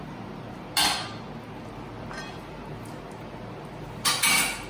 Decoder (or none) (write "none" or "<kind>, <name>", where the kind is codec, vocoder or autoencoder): none